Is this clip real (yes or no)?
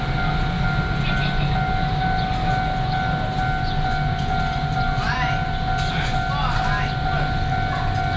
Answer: yes